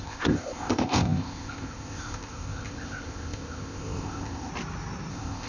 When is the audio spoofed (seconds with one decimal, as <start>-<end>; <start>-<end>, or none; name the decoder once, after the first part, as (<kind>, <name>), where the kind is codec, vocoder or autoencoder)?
0.0-4.5 (codec, ZipCodec); 5.1-5.5